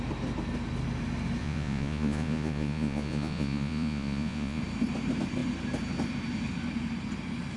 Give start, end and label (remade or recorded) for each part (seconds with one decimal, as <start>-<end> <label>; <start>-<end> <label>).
0.0-1.4 recorded; 1.4-4.6 remade; 4.6-7.6 recorded